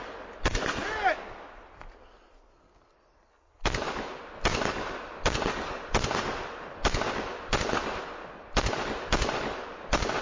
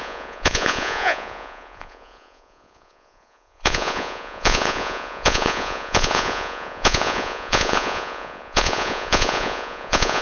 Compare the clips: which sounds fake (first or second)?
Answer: second